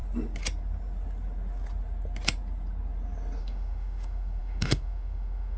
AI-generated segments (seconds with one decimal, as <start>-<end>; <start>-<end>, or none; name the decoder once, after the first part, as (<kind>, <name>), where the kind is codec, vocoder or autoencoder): 3.4-5.6 (autoencoder, DAC-VAE)